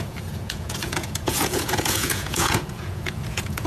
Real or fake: fake